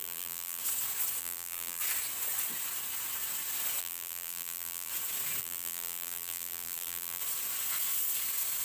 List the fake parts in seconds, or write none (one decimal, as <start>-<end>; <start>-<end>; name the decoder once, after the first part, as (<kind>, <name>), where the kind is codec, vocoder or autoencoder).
0.0-0.6 (vocoder, BigVGAN v2); 1.2-1.8; 3.8-4.9; 5.4-7.2